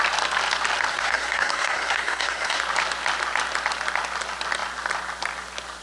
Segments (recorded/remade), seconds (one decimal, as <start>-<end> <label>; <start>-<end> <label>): 0.0-0.9 recorded; 0.9-2.6 remade; 2.6-5.8 recorded